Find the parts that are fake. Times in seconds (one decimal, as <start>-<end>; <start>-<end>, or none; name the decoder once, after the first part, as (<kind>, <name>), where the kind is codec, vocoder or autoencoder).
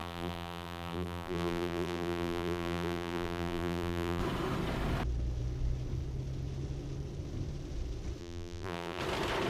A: 0.0-4.2 (vocoder, BigVGAN v2); 8.2-9.0